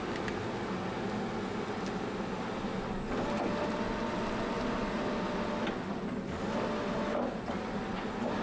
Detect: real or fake real